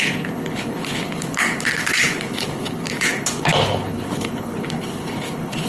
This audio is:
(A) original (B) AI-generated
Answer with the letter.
B